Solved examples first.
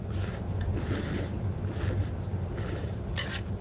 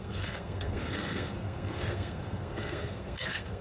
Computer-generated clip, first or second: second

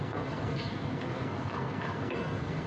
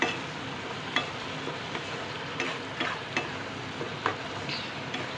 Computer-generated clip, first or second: first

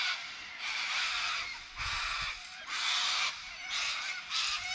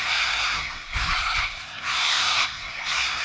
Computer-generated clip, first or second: second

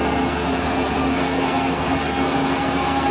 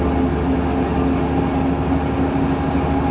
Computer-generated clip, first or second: first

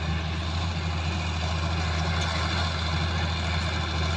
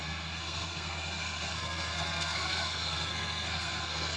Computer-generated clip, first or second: second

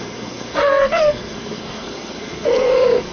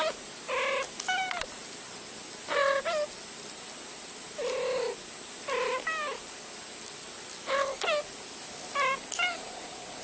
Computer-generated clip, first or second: first